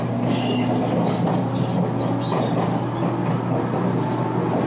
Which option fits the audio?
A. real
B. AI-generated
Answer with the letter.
A